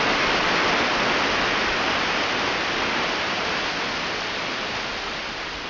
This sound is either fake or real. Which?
real